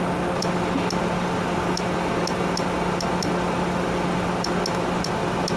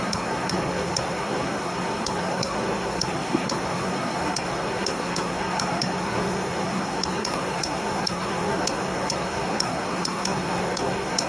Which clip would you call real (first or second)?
first